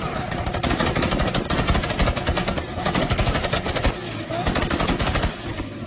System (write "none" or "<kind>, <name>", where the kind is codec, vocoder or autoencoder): none